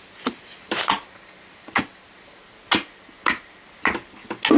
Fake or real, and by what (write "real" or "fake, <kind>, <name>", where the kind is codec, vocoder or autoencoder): real